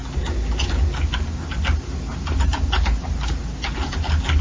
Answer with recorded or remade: recorded